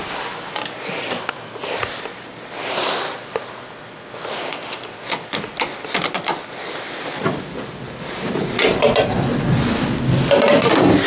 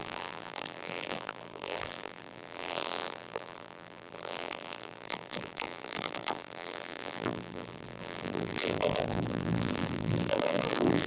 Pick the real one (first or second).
first